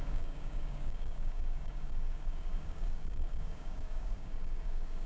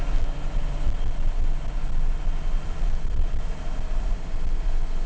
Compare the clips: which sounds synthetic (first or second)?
first